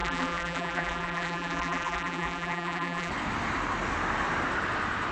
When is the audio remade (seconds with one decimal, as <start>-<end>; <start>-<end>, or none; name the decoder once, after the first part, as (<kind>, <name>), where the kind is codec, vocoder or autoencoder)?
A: 0.0-3.1 (vocoder, BigVGAN v2)